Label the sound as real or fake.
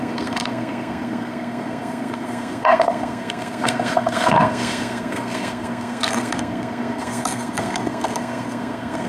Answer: fake